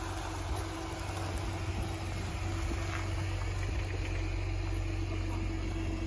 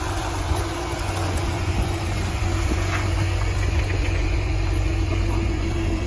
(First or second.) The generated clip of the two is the second